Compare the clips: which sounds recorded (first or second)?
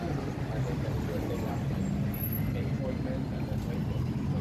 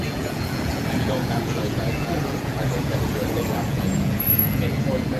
first